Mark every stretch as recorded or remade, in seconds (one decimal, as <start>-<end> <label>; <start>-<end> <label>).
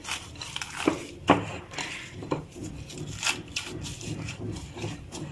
0.0-2.2 recorded; 2.2-2.9 remade; 2.9-5.3 recorded